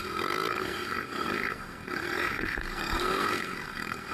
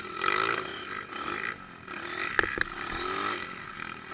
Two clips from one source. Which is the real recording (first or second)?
second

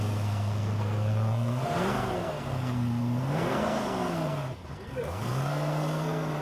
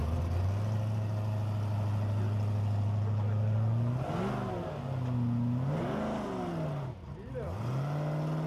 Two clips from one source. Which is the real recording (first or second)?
second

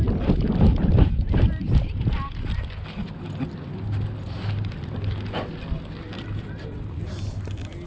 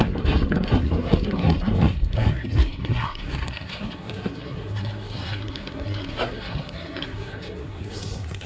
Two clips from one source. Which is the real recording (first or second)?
first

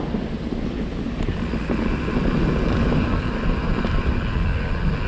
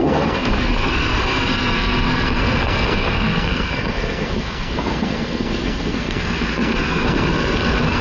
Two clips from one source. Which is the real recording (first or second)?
first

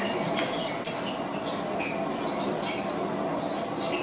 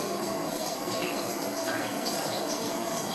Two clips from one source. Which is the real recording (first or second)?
first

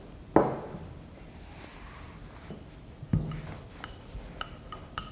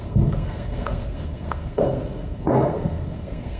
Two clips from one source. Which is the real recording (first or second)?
first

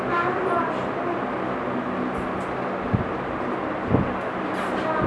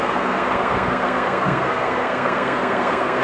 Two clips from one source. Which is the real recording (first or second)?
first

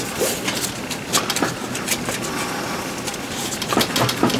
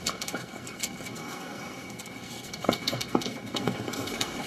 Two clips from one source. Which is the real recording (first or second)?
first